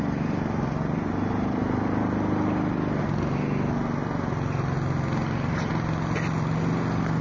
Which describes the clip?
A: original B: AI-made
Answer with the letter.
A